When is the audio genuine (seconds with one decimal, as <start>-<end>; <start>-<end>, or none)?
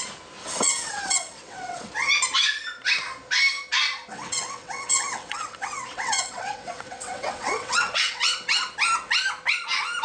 0.0-0.4; 1.9-4.1; 8.7-10.0